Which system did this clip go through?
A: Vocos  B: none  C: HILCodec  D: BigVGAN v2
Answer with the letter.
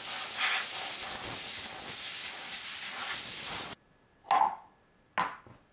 B